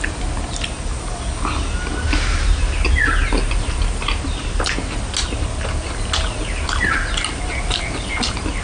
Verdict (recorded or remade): recorded